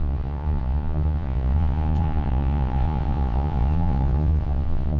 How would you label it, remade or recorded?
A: remade